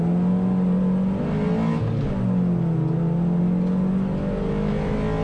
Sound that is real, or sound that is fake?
real